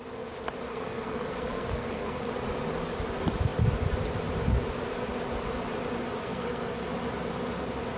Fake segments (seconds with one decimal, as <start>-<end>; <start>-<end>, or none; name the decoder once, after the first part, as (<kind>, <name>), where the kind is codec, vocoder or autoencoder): 0.7-2.3 (codec, SNAC); 6.2-6.9